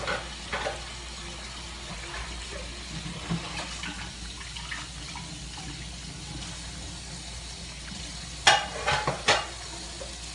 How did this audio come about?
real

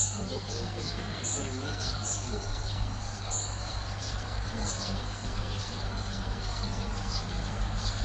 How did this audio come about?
fake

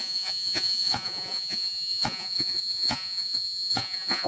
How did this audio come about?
fake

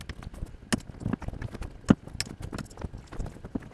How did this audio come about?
real